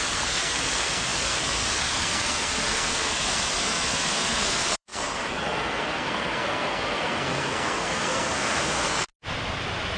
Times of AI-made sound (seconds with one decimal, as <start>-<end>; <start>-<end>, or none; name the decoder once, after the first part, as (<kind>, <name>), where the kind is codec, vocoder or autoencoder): 0.0-9.1 (codec, SNAC)